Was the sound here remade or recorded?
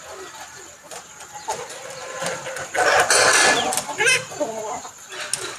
recorded